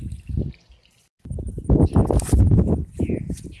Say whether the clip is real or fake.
real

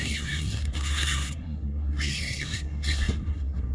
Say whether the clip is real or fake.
fake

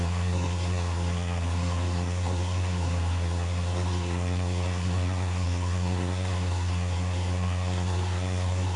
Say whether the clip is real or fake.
fake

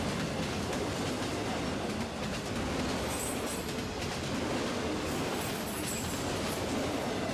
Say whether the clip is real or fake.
real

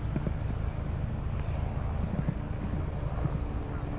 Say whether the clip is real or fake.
real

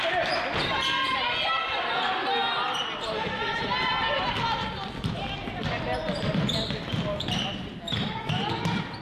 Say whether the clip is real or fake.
real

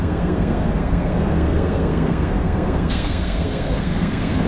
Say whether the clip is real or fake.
fake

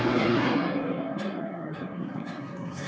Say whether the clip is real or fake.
fake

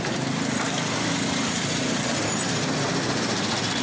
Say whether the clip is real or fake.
real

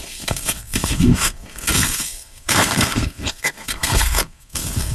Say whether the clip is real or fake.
fake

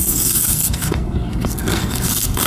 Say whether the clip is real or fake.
fake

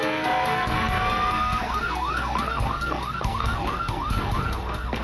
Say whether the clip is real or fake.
fake